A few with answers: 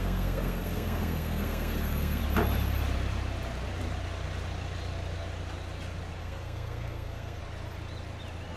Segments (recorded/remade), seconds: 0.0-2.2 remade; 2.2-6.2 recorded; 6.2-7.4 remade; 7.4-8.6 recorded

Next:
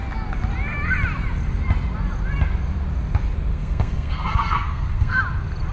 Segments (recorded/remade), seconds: 0.0-3.5 recorded; 3.5-5.2 remade; 5.2-5.7 recorded